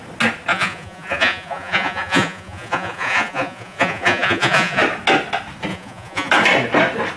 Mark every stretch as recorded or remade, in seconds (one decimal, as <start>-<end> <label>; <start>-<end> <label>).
0.0-0.5 recorded; 0.5-4.8 remade; 4.8-5.7 recorded; 5.7-6.3 remade; 6.3-7.2 recorded